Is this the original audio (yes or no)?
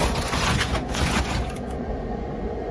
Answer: no